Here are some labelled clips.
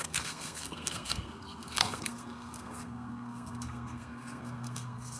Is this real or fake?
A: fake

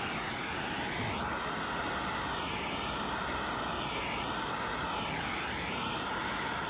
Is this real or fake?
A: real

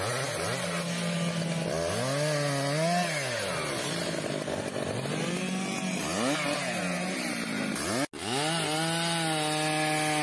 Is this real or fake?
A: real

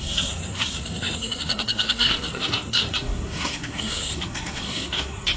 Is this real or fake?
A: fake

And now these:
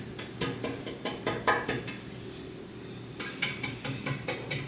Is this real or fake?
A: real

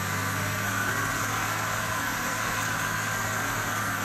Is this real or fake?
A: fake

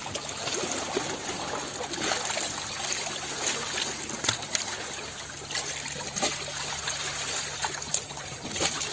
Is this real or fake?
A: real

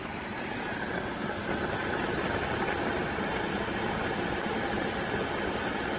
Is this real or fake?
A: real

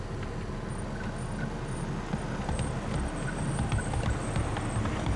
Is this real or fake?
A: real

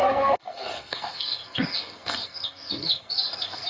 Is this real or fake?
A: fake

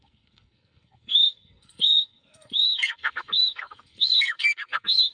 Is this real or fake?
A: fake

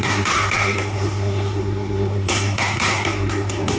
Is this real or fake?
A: fake